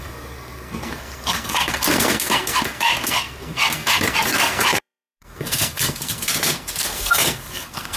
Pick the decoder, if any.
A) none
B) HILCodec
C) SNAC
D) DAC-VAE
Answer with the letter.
C